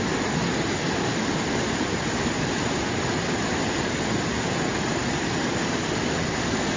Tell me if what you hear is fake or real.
real